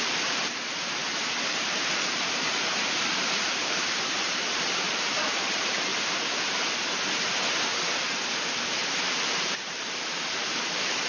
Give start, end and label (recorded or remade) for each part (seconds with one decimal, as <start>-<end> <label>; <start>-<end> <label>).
0.0-1.0 remade; 1.0-1.6 recorded; 1.6-5.9 remade; 5.9-9.1 recorded; 9.1-11.1 remade